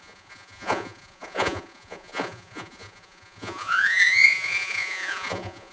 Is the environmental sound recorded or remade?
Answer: remade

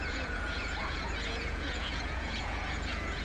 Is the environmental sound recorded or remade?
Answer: remade